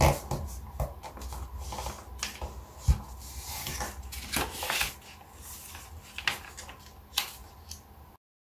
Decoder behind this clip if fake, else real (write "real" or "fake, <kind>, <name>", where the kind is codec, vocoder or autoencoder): real